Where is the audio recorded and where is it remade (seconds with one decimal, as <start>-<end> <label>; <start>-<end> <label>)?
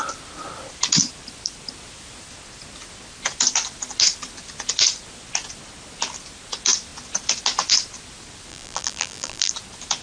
0.0-8.5 recorded; 8.5-9.5 remade; 9.5-10.0 recorded